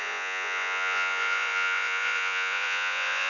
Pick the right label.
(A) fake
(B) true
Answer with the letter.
A